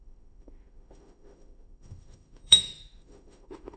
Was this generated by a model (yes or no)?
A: yes